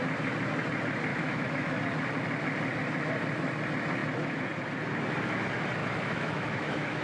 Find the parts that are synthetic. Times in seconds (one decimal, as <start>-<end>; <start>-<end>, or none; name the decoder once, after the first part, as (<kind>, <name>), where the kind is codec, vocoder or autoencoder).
1.1-1.8 (autoencoder, DAC-VAE); 5.8-7.0